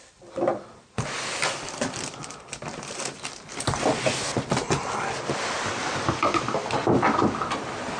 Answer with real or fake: real